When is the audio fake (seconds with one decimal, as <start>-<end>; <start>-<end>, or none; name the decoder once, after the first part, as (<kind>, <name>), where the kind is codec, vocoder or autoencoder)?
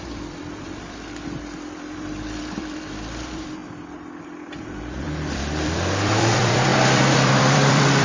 0.0-3.6 (vocoder, BigVGAN v2); 4.2-8.0